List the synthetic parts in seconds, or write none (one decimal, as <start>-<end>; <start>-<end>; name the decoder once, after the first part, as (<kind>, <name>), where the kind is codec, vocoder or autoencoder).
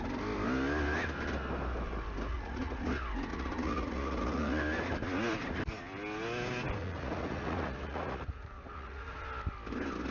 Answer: 2.3-2.9 (vocoder, Vocos); 3.3-4.6; 6.8-9.2